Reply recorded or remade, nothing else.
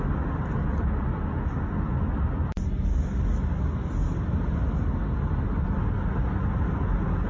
recorded